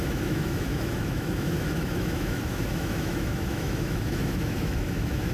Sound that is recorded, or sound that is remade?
remade